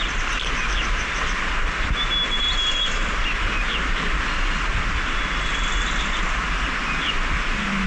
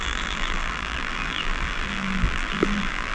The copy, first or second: second